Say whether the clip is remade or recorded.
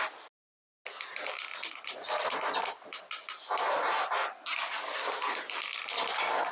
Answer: recorded